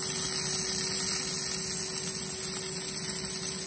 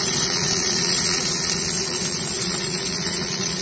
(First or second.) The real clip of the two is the first